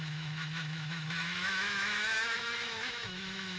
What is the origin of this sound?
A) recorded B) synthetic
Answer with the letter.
B